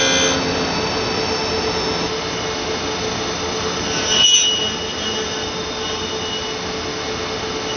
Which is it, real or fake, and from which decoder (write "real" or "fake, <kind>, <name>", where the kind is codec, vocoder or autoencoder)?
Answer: real